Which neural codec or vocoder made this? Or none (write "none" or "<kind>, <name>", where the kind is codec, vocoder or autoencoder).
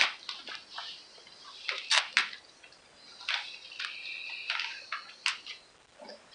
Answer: none